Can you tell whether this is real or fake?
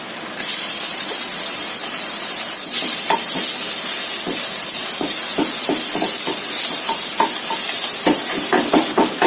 real